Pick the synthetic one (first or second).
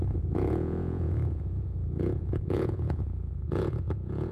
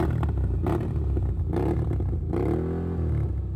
first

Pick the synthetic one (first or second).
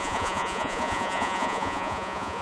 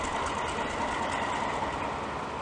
first